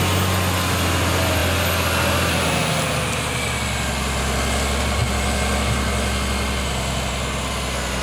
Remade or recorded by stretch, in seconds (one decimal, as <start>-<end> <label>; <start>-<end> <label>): 0.0-8.0 recorded